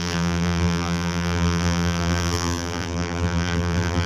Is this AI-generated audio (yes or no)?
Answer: yes